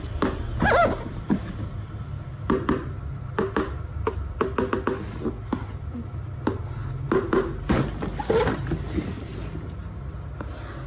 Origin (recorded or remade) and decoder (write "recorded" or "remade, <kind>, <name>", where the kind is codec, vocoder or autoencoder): recorded